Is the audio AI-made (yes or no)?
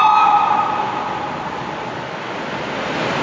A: no